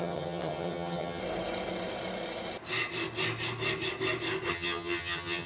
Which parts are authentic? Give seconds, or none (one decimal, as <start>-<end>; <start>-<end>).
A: 1.2-4.5